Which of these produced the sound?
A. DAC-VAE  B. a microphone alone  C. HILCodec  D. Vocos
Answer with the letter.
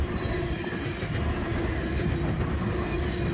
B